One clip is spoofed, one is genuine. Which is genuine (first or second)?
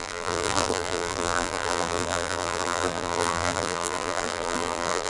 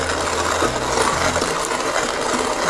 second